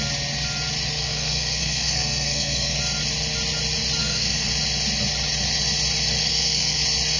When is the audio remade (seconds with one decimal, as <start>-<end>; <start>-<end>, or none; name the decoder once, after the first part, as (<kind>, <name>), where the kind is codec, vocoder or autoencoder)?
1.0-2.8 (codec, SNAC); 4.0-4.5; 6.2-6.8